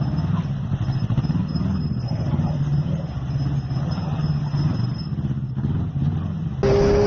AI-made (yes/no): no